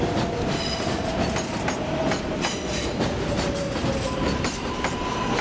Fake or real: real